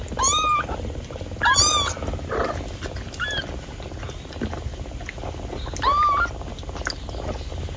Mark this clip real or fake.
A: real